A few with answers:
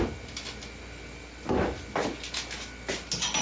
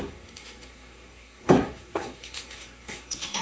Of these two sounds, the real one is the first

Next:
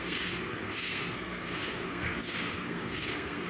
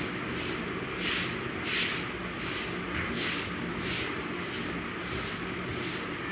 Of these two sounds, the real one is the second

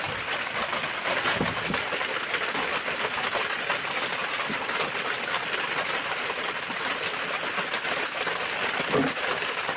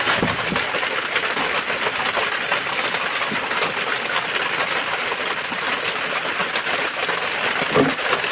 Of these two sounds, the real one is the second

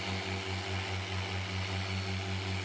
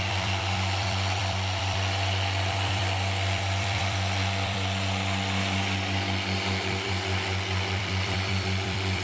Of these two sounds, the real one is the first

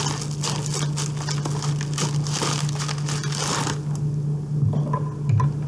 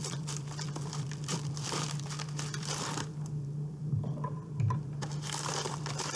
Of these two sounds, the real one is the first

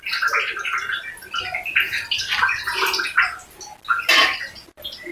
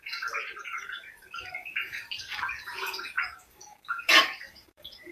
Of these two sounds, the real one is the first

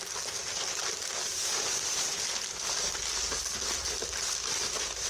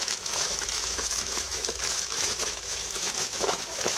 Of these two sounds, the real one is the first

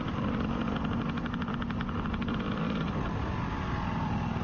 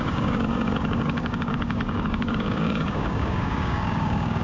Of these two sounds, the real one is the first